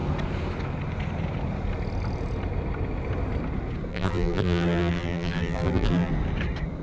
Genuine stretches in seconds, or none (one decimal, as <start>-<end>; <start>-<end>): 0.0-3.9; 6.1-6.8